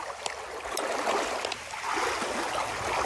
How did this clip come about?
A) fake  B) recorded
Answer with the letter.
B